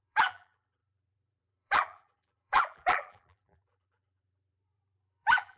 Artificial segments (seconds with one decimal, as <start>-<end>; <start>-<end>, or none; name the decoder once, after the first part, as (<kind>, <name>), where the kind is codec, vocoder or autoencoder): 0.0-5.6 (vocoder, BigVGAN v2)